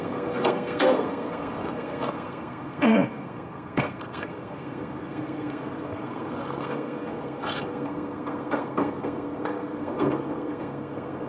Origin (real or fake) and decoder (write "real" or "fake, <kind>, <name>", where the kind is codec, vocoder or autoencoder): fake, codec, SNAC